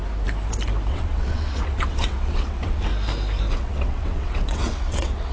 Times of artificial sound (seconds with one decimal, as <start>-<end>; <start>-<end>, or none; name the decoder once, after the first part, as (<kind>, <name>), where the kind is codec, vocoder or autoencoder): 0.9-2.9 (vocoder, WaveNeXt); 3.5-5.3